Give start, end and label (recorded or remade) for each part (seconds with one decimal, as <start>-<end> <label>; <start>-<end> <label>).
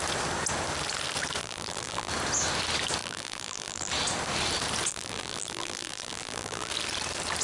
0.0-1.4 recorded; 1.4-2.1 remade; 2.1-3.0 recorded; 3.0-3.9 remade; 3.9-4.9 recorded; 4.9-6.7 remade; 6.7-7.4 recorded